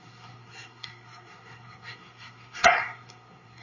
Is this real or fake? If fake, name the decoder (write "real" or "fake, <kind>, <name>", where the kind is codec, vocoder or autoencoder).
fake, codec, SNAC